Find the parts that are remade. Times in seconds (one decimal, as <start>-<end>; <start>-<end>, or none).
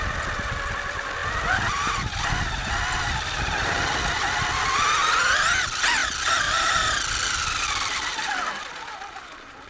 none